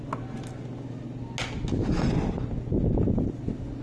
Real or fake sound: real